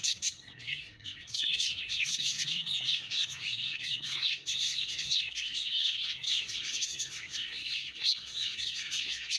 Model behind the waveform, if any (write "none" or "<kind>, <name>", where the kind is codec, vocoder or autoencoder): codec, SNAC